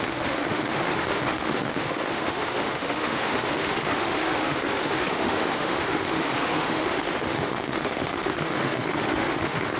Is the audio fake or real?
fake